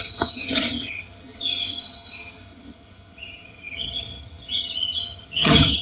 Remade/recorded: remade